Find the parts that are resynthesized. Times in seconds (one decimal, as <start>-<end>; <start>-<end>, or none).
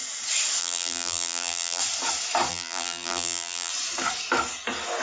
0.6-1.8; 2.5-3.7